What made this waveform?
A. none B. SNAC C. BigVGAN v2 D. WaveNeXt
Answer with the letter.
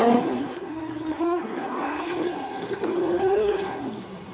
B